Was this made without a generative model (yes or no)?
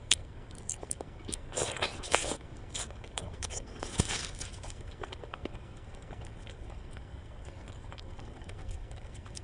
no